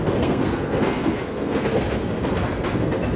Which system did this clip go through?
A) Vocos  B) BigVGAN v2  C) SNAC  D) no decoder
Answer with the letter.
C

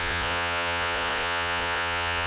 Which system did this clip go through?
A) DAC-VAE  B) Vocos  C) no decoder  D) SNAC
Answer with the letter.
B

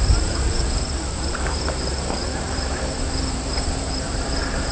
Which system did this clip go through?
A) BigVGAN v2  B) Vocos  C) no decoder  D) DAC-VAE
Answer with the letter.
A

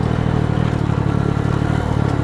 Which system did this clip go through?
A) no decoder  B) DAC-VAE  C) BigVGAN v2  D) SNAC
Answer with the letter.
A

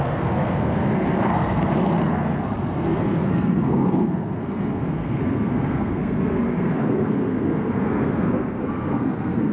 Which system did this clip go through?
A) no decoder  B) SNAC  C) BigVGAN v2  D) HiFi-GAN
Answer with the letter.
B